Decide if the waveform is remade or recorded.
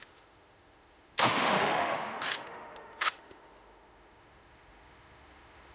remade